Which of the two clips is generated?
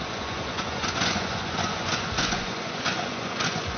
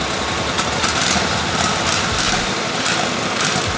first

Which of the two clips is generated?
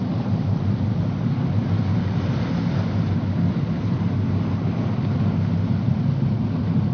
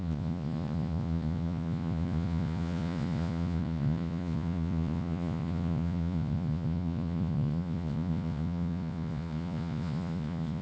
second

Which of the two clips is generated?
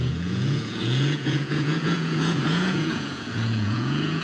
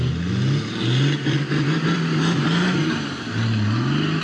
first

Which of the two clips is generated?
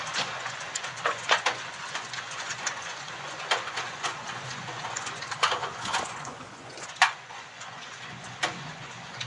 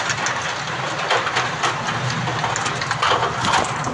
first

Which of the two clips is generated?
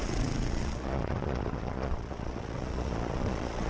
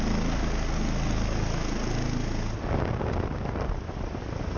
first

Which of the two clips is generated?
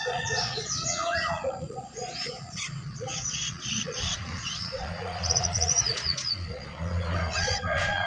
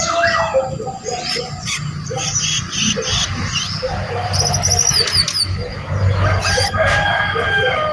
first